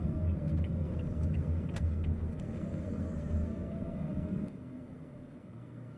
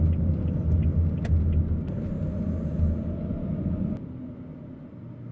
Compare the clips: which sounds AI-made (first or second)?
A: first